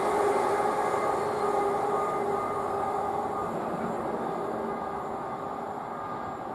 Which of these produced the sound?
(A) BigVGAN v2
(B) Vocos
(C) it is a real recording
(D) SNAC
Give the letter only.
C